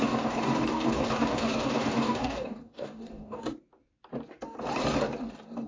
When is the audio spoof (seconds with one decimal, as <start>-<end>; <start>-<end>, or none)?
0.0-3.4